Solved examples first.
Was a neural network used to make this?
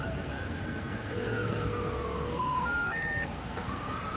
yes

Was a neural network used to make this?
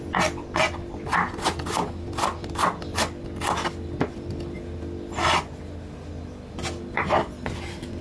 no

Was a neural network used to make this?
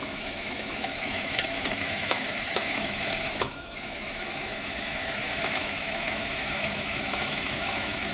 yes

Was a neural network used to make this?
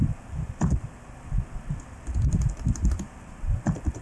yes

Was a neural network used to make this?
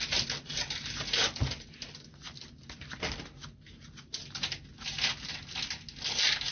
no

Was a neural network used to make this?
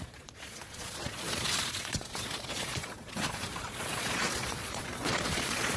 yes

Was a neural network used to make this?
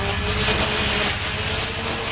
no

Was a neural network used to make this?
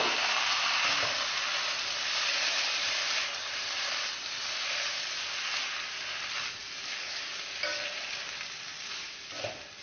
no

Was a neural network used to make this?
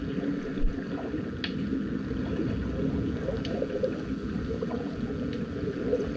no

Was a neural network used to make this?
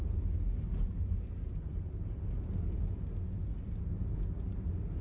no